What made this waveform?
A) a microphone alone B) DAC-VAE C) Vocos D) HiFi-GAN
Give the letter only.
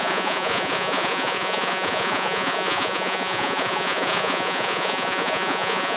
C